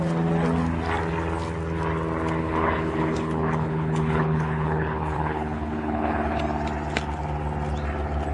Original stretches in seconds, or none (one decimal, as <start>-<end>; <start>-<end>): 0.0-2.4; 6.4-8.3